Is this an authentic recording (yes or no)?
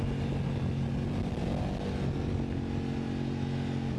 yes